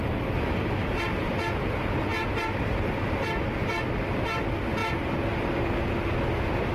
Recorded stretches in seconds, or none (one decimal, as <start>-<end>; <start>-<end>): 0.0-4.8; 5.7-6.7